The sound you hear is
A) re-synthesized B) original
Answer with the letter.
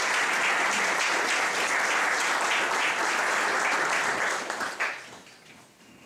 B